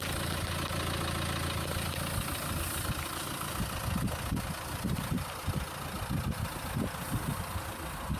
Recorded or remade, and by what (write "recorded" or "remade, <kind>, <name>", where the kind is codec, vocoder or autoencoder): recorded